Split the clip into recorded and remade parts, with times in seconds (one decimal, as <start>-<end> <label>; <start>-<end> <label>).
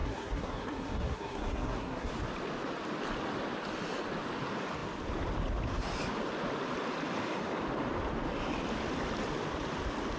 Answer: 0.0-2.1 remade; 2.1-10.2 recorded